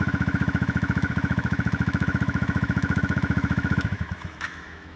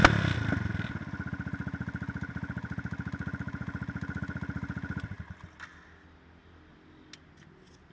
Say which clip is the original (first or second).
second